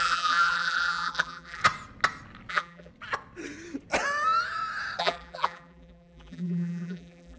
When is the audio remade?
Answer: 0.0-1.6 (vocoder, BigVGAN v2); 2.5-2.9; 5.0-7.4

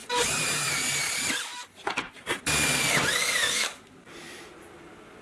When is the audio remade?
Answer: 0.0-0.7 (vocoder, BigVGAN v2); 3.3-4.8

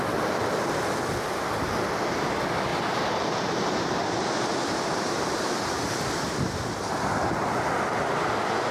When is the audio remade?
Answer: 2.7-7.8 (vocoder, BigVGAN v2)

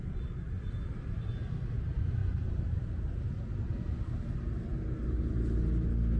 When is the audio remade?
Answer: 2.2-3.1 (vocoder, BigVGAN v2)

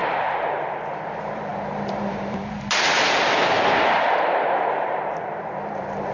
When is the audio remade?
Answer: 0.6-6.1 (vocoder, BigVGAN v2)